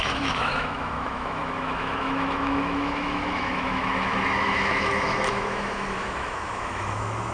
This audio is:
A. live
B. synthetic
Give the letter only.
B